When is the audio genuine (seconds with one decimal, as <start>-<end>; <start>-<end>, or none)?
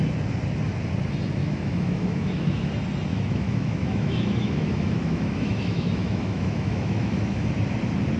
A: 0.0-1.4; 2.7-3.1; 7.5-8.2